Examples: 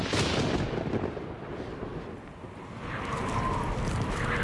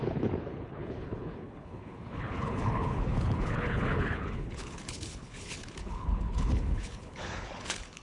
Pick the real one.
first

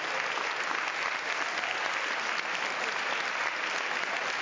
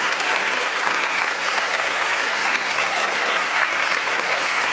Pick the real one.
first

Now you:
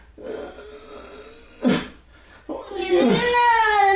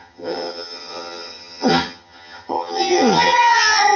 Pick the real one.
first